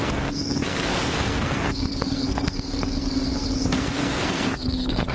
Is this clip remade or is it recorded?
remade